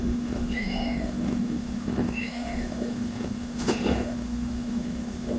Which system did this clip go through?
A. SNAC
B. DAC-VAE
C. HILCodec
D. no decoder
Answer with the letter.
B